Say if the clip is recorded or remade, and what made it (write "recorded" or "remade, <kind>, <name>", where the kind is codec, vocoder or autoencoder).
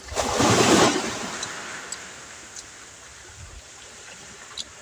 remade, vocoder, BigVGAN v2